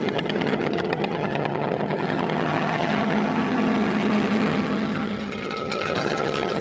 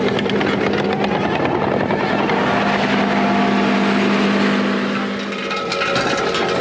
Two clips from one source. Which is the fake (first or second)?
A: first